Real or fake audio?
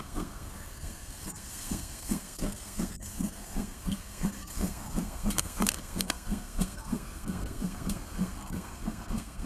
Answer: fake